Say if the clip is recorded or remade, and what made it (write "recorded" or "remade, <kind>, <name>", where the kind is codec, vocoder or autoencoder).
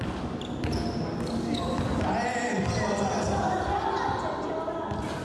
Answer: recorded